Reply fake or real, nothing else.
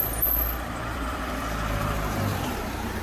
fake